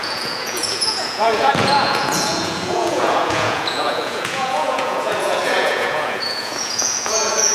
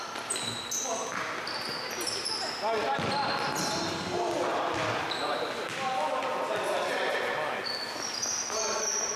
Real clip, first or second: second